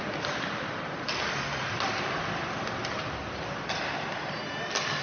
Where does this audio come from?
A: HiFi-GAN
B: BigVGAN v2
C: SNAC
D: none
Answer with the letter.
D